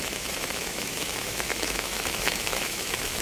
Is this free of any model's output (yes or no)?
no